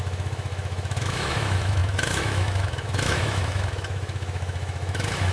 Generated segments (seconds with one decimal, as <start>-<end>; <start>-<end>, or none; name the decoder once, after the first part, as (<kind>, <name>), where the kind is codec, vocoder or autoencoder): 0.0-5.3 (autoencoder, DAC-VAE)

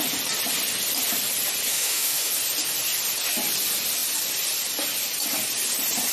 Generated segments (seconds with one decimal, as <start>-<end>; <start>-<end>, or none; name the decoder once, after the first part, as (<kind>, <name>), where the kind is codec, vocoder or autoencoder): 1.7-2.3 (autoencoder, DAC-VAE)

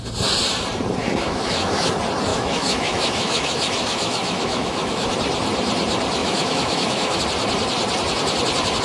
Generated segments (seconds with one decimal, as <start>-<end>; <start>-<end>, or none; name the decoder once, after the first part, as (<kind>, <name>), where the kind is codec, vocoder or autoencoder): 1.0-1.9 (autoencoder, DAC-VAE); 2.3-5.1; 6.2-7.2

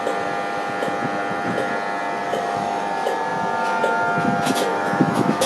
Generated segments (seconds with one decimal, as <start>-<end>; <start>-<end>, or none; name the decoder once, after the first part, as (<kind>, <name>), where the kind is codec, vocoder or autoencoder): 2.3-2.8 (autoencoder, DAC-VAE); 4.7-5.5

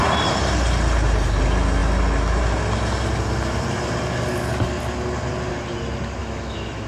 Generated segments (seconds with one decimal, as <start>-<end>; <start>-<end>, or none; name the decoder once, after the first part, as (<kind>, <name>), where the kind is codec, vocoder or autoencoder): 6.2-6.9 (autoencoder, DAC-VAE)

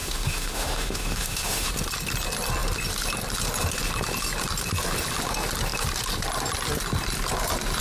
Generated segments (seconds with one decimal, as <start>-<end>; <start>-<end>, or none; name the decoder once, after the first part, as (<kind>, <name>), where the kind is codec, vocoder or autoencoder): 0.0-1.7 (autoencoder, DAC-VAE)